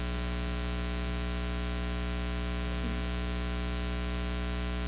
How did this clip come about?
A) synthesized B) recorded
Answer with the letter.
B